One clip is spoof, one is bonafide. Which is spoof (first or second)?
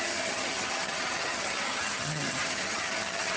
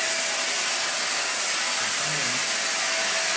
first